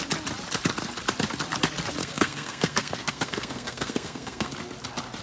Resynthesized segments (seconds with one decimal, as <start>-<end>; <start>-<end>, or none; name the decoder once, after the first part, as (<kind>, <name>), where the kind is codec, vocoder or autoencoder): 2.0-4.5 (codec, SNAC)